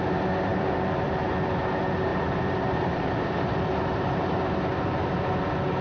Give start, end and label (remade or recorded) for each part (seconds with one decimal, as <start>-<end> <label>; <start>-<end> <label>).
0.0-0.5 recorded; 0.5-1.1 remade; 1.1-2.1 recorded; 2.1-4.2 remade; 4.2-5.8 recorded